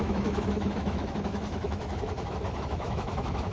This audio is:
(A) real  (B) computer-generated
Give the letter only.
B